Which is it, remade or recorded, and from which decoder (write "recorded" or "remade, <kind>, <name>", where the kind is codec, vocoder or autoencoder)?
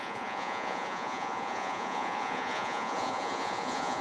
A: remade, vocoder, Vocos